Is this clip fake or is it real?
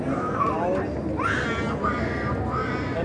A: real